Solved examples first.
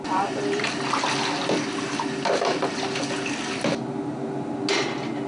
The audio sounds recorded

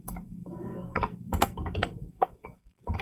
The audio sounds remade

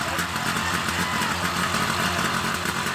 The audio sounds recorded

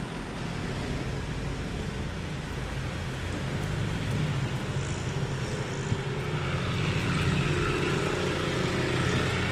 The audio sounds recorded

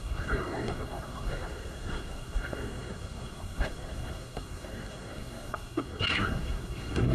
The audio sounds remade